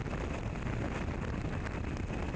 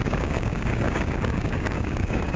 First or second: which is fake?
second